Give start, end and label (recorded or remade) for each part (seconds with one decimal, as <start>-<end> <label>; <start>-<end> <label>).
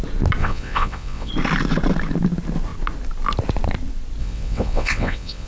0.0-0.4 recorded; 0.4-1.3 remade; 1.3-4.2 recorded; 4.2-5.5 remade